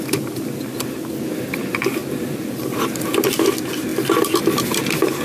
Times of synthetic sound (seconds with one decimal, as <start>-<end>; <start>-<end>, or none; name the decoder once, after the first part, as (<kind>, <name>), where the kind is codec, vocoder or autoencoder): none